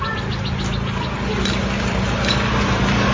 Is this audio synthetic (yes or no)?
no